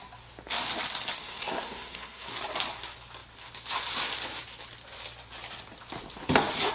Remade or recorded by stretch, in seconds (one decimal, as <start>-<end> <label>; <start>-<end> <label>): 0.0-1.1 recorded; 1.1-2.3 remade; 2.3-6.7 recorded